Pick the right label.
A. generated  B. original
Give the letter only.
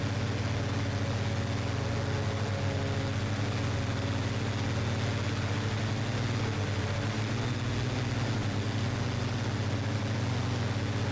B